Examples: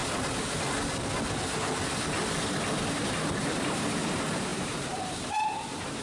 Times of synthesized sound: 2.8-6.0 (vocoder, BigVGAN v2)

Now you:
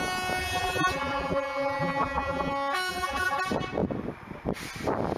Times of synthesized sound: 0.4-2.5 (vocoder, BigVGAN v2); 2.9-3.4

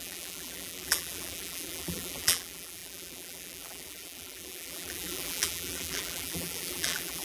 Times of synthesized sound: 0.0-7.2 (vocoder, BigVGAN v2)

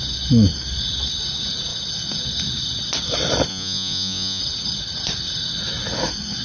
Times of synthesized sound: 3.5-4.4 (vocoder, Vocos)

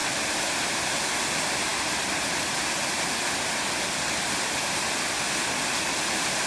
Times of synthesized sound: none

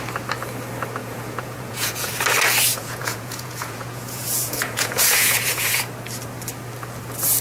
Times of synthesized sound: 1.0-2.1 (vocoder, Vocos); 2.7-5.8

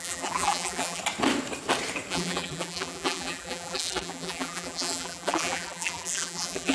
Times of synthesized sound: 0.0-1.0 (vocoder, BigVGAN v2); 2.1-6.7